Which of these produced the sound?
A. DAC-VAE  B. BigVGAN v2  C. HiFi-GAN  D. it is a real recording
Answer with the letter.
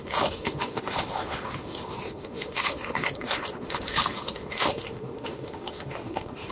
A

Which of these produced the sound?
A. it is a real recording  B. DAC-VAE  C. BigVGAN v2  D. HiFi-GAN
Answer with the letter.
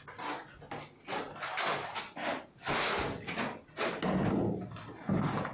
A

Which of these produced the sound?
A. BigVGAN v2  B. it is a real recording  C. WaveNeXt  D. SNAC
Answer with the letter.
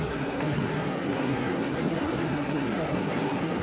D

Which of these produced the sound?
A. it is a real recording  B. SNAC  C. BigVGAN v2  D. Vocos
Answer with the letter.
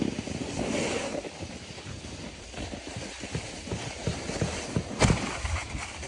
A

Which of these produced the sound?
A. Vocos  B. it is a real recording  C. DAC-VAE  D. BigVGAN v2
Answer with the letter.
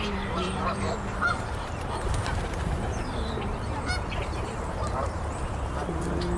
D